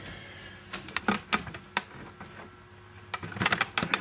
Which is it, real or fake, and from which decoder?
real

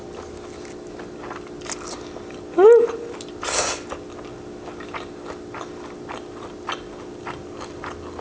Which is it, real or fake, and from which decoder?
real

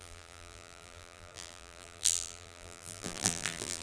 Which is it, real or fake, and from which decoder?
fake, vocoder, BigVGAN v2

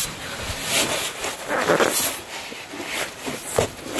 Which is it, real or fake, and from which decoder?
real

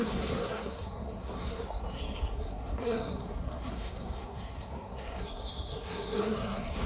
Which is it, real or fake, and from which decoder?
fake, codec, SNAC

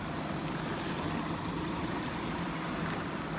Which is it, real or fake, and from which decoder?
real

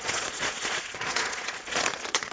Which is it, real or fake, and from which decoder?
fake, vocoder, Vocos